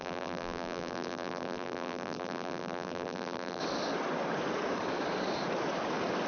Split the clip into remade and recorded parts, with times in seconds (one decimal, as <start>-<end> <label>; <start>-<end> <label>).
0.0-3.6 remade; 3.6-6.3 recorded